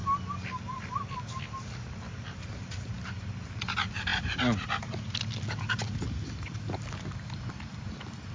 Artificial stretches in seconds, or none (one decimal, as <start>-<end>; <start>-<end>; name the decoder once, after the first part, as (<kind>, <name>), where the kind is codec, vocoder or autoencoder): none